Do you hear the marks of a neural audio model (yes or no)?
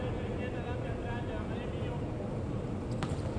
no